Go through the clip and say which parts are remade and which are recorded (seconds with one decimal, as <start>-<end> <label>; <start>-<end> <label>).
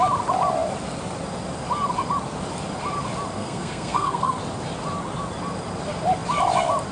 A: 0.0-3.4 recorded; 3.4-4.4 remade; 4.4-6.9 recorded